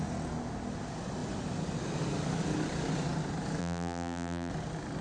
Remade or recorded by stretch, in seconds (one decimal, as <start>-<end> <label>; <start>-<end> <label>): 0.0-3.6 recorded; 3.6-4.5 remade; 4.5-5.0 recorded